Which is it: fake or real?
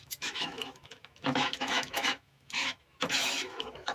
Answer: fake